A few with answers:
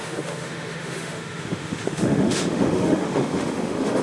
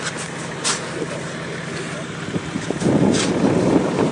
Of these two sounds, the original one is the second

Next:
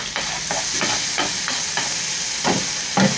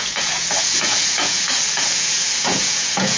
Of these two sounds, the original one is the first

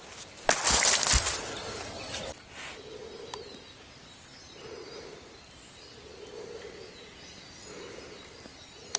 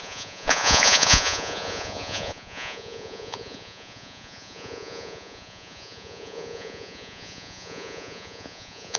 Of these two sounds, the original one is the first